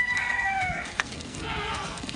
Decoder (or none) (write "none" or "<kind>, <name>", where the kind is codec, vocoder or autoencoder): codec, SNAC